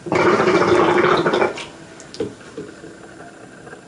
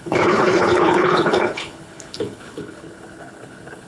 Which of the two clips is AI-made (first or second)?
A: second